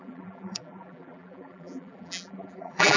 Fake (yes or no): yes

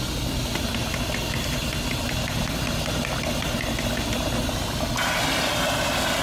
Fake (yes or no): no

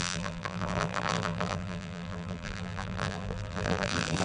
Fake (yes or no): yes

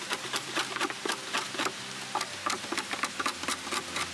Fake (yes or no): no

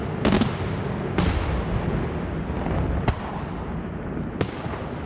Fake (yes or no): no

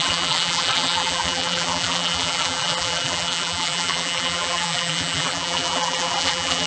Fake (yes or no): yes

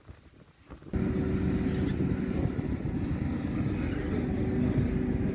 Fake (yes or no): no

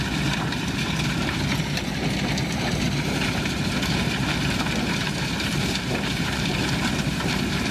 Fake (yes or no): yes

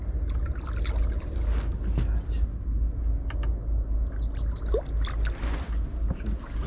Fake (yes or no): no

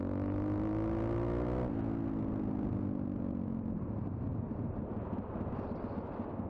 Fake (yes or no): no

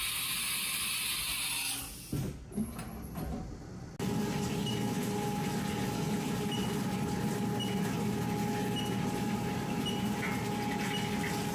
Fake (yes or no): no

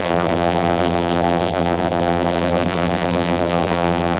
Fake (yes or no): yes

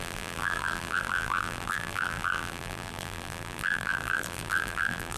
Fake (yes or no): yes